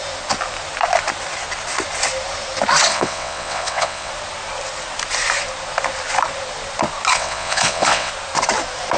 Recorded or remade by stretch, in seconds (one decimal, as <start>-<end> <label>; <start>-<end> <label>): 0.0-2.9 recorded; 2.9-4.1 remade; 4.1-7.1 recorded; 7.1-8.1 remade; 8.1-9.0 recorded